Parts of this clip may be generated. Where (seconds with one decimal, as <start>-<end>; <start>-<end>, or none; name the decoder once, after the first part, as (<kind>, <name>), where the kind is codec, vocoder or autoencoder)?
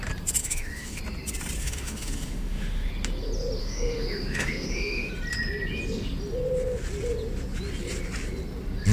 0.4-1.0 (autoencoder, DAC-VAE); 1.6-2.9; 3.6-5.1